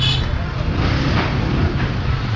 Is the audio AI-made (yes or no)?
no